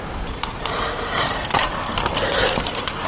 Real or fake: fake